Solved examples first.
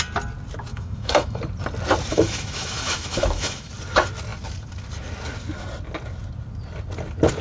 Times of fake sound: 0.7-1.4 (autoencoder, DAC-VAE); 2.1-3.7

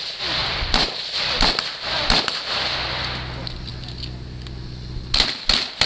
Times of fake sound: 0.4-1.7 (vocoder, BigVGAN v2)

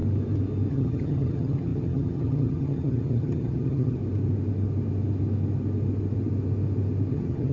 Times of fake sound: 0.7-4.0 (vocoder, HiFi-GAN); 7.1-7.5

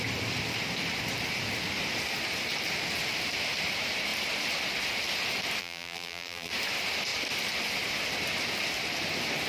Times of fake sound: 5.6-6.5 (vocoder, BigVGAN v2)

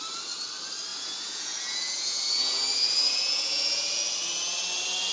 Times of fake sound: 0.9-4.0 (vocoder, Vocos)

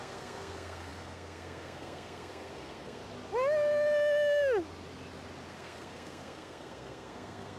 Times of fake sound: 0.0-3.0 (codec, SNAC); 5.5-7.6

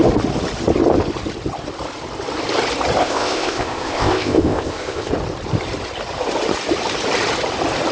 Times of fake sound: 3.0-5.1 (codec, ZipCodec)

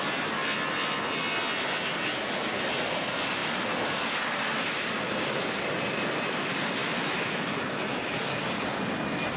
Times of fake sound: 6.8-8.3 (autoencoder, DAC-VAE)